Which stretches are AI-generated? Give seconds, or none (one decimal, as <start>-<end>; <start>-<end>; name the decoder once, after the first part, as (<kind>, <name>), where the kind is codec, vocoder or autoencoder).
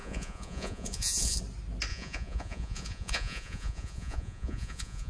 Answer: 0.0-1.4 (vocoder, Vocos); 1.9-5.1